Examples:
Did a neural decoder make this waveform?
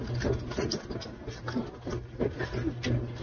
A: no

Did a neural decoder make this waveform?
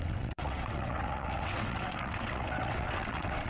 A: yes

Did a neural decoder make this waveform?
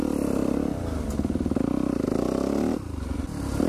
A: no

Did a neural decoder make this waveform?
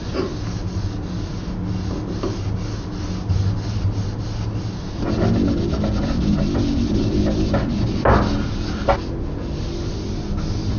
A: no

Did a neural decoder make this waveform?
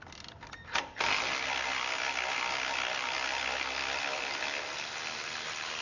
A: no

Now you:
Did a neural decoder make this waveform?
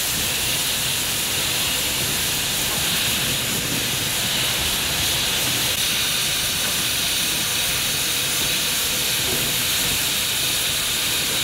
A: no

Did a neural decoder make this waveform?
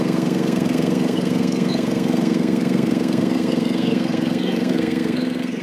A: yes